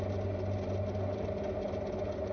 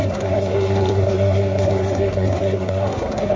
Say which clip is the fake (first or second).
second